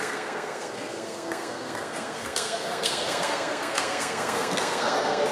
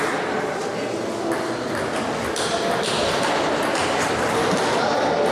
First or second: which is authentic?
second